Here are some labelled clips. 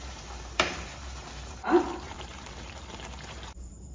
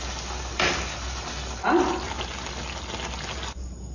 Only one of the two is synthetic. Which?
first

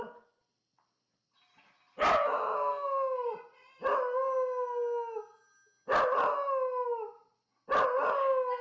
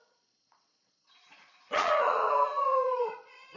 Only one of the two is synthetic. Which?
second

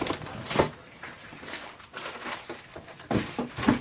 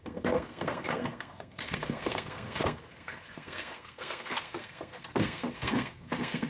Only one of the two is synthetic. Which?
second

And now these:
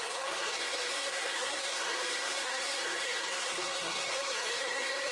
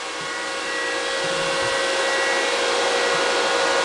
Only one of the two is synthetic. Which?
first